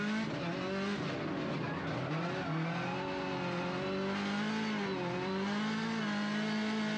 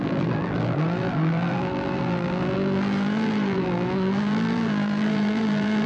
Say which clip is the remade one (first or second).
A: second